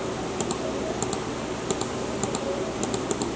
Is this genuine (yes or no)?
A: yes